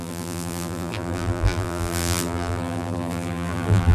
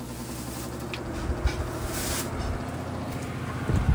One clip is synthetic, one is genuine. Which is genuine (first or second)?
second